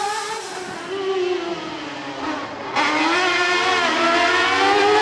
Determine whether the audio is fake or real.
real